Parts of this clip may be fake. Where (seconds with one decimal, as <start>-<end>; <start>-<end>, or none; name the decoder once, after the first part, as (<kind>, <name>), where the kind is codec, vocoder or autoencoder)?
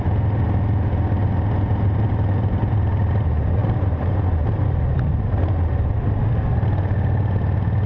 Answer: 1.2-3.1 (vocoder, BigVGAN v2); 3.6-5.3